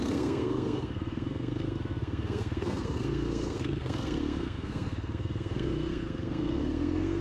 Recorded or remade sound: remade